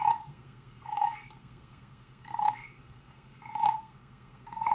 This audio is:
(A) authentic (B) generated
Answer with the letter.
B